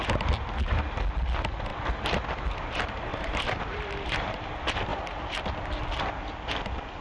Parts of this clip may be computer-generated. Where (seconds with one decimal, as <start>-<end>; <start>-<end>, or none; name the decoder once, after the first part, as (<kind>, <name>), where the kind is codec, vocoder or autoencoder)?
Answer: 3.1-4.5 (vocoder, BigVGAN v2); 4.9-5.4